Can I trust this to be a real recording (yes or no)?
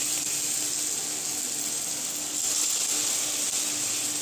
yes